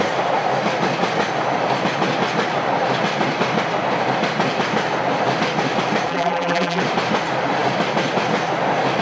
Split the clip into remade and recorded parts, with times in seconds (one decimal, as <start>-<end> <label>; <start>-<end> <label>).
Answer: 0.0-6.1 recorded; 6.1-6.8 remade; 6.8-9.0 recorded